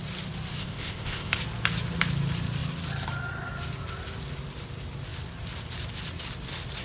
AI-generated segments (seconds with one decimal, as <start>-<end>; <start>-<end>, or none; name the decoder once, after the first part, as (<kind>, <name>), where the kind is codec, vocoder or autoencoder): 0.6-1.4 (codec, ZipCodec)